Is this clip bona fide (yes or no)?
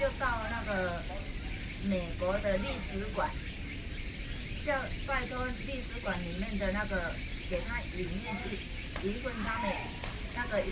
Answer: yes